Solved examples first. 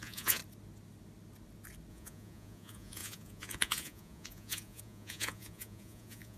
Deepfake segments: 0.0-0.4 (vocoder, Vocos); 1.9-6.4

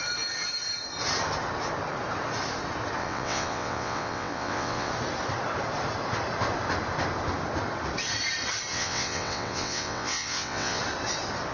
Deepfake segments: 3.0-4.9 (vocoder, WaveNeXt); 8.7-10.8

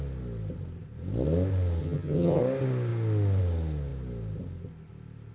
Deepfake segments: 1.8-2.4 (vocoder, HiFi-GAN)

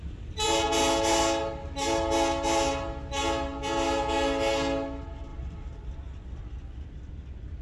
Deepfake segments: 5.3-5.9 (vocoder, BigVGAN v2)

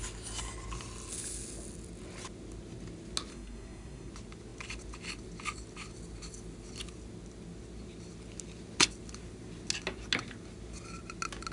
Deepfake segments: 3.3-4.1 (codec, SNAC)